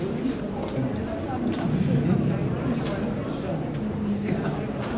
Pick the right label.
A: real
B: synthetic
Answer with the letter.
A